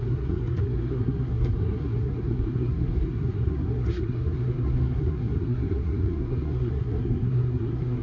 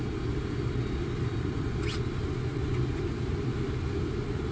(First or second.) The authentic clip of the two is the second